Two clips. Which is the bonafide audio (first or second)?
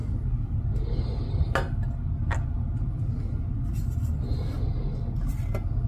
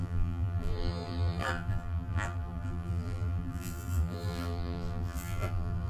first